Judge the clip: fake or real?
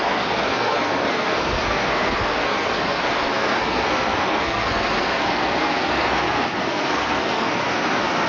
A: fake